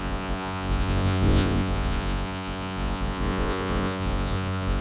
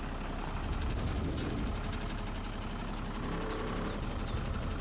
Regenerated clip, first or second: first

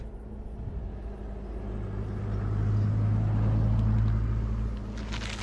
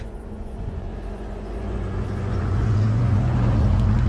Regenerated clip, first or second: second